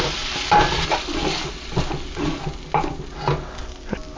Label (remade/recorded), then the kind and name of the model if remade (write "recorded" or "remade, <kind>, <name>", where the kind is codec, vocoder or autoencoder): recorded